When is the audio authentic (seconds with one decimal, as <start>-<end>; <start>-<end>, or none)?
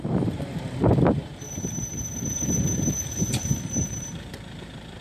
none